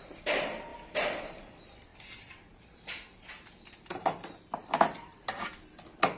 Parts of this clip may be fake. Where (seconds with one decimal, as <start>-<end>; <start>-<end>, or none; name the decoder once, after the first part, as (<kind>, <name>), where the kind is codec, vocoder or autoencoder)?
0.7-1.4 (vocoder, BigVGAN v2); 4.6-5.6